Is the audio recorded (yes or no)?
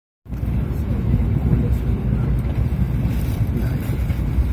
yes